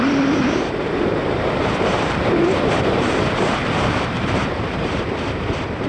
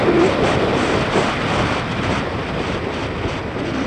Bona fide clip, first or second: second